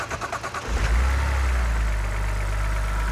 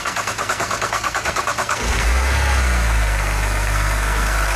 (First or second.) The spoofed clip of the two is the second